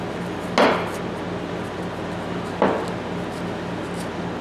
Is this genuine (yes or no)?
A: yes